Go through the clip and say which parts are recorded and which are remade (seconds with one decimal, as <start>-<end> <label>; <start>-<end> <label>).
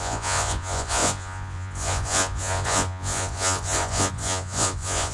0.0-5.1 remade